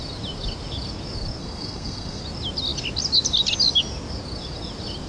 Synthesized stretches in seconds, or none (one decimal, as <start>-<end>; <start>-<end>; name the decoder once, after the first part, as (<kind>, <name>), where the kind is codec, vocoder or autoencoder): 1.4-2.2 (codec, SNAC)

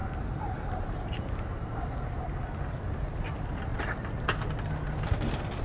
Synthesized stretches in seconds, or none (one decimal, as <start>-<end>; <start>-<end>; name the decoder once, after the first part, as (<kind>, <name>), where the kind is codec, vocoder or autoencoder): none

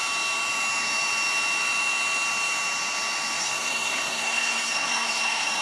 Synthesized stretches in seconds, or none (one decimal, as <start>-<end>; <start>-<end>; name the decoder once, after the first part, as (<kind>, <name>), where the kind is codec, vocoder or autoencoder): 3.4-5.6 (codec, SNAC)

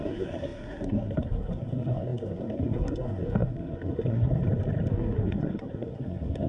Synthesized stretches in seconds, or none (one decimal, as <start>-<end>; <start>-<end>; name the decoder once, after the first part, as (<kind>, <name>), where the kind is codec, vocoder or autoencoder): 0.0-4.4 (codec, SNAC); 4.9-6.5

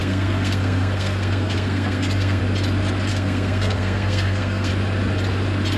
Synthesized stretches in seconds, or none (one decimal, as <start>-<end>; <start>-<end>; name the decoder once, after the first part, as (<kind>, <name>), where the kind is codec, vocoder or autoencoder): 0.0-2.4 (codec, SNAC); 3.1-4.7

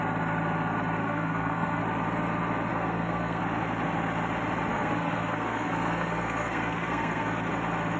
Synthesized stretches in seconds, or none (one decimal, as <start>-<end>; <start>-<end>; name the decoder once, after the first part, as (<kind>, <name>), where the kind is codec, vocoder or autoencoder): 1.0-1.8 (codec, SNAC); 2.7-3.4; 4.7-7.5

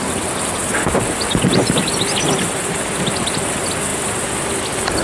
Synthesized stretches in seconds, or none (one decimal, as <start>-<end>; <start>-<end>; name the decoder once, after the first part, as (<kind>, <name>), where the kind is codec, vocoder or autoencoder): none